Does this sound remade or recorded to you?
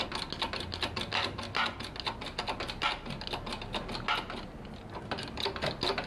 recorded